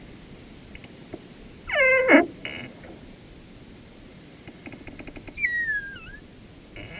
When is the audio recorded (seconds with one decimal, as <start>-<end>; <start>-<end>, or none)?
0.0-0.8; 1.4-2.4; 2.9-4.1; 4.8-7.0